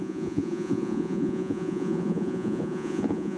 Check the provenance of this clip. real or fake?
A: fake